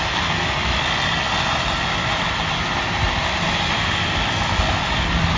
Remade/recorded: recorded